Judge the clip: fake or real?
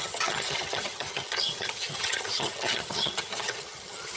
fake